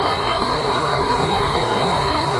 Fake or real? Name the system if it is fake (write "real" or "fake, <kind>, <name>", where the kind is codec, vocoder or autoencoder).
fake, codec, SNAC